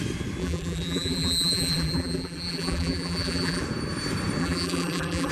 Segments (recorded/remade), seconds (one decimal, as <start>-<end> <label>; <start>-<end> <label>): 0.0-0.4 recorded; 0.4-3.6 remade; 3.6-4.4 recorded; 4.4-5.3 remade